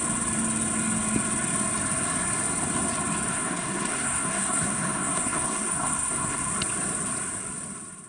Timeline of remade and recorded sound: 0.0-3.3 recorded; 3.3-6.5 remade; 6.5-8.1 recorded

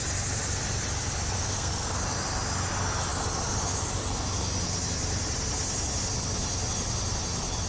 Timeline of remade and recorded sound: 0.0-1.4 recorded; 1.4-2.0 remade; 2.0-7.7 recorded

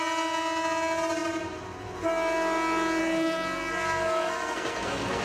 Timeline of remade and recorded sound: 0.0-3.0 recorded; 3.0-5.2 remade

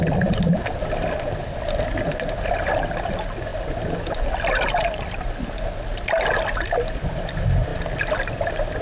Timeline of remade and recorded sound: 0.0-8.8 recorded

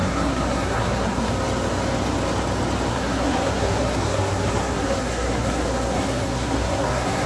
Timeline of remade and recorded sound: 0.0-1.3 remade; 1.3-2.9 recorded; 2.9-7.3 remade